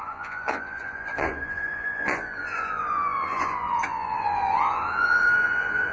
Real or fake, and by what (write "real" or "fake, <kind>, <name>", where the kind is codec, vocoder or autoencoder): fake, vocoder, Vocos